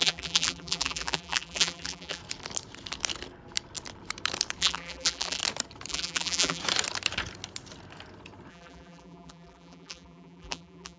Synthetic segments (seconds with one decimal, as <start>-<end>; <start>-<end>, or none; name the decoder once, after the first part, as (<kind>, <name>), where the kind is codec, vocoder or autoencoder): 0.0-2.2 (vocoder, BigVGAN v2); 4.6-5.4; 5.9-6.6; 8.5-11.0